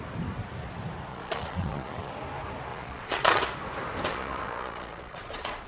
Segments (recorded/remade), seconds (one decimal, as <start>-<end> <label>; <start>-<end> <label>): 0.0-1.1 recorded; 1.1-2.1 remade; 2.1-2.7 recorded; 2.7-3.4 remade; 3.4-4.1 recorded; 4.1-5.7 remade